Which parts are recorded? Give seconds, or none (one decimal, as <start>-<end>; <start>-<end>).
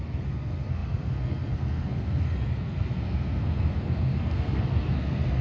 none